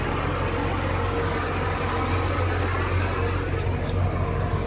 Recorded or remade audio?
recorded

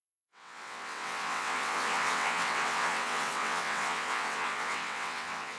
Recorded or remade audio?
remade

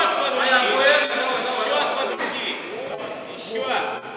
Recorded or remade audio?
recorded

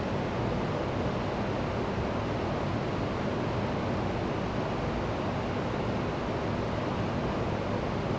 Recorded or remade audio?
recorded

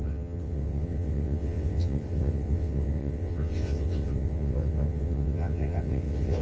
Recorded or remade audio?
remade